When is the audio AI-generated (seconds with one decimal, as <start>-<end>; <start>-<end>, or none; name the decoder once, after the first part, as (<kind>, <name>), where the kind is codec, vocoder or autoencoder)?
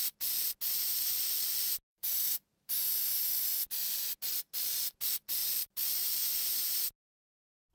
1.9-3.3 (vocoder, BigVGAN v2); 5.4-6.8